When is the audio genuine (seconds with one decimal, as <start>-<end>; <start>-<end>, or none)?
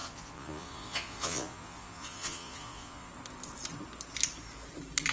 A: 3.1-5.1